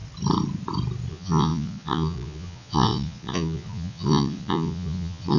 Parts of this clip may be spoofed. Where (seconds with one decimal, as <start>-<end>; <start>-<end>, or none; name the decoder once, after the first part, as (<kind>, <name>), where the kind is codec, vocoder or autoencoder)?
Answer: 1.1-5.4 (vocoder, Vocos)